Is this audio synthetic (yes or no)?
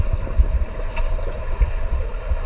no